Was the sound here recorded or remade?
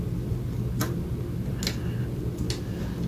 recorded